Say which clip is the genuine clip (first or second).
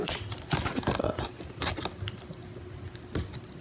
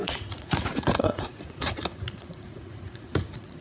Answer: first